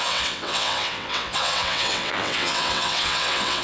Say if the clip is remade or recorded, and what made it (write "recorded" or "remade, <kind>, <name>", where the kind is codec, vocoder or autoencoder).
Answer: remade, vocoder, WaveNeXt